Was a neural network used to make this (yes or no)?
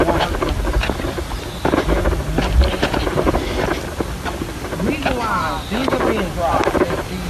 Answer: no